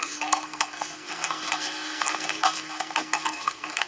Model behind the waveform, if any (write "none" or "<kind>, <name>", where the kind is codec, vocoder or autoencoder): codec, SNAC